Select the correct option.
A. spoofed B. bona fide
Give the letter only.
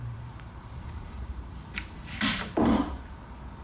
A